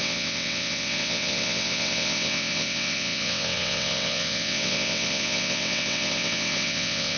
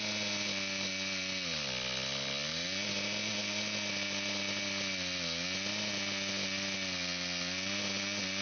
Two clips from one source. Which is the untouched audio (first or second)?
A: second